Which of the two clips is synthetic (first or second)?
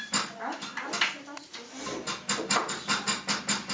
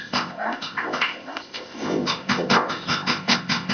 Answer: second